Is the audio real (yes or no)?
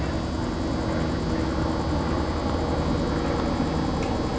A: yes